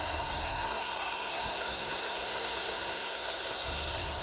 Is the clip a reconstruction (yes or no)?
yes